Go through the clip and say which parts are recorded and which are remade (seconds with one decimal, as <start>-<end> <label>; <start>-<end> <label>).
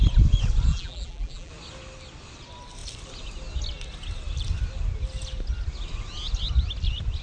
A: 0.0-0.7 recorded; 0.7-1.5 remade; 1.5-7.2 recorded